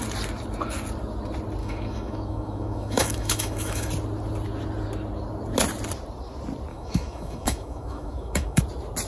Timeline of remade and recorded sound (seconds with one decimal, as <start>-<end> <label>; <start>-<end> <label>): 0.0-1.6 recorded; 1.6-3.9 remade; 3.9-6.7 recorded; 6.7-8.6 remade; 8.6-9.1 recorded